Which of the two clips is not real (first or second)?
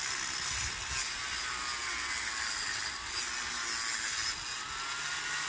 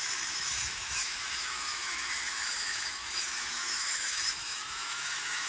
second